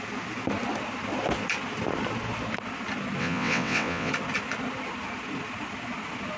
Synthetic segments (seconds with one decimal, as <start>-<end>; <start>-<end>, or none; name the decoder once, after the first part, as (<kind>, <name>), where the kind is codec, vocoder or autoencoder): 3.2-4.1 (vocoder, WaveNeXt)